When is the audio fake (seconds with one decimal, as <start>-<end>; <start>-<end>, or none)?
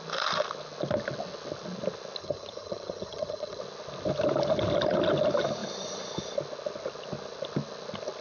2.2-3.6